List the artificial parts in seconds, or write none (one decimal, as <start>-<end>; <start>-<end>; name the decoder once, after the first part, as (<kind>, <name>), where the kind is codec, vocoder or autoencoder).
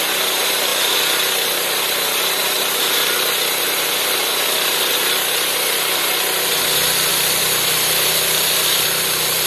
7.1-9.5 (vocoder, BigVGAN v2)